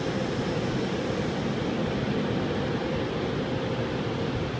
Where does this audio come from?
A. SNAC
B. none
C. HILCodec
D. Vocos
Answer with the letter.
B